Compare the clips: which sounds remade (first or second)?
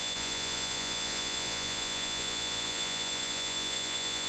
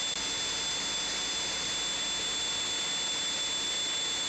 first